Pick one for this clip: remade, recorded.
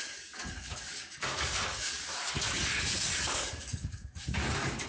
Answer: remade